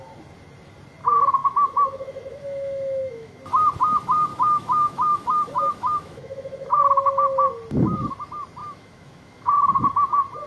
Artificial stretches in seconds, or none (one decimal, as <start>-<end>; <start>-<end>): 1.4-3.4; 4.3-6.8; 8.6-10.1